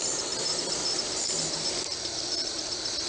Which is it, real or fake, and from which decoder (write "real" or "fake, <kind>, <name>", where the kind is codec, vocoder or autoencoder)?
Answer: real